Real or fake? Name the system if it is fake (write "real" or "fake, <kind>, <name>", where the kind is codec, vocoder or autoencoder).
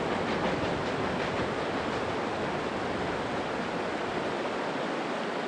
real